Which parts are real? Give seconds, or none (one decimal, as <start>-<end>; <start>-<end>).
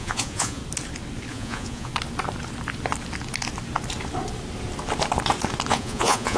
0.6-1.3; 1.9-5.7